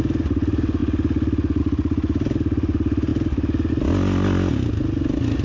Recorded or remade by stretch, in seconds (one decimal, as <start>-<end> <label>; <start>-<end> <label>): 0.0-5.4 recorded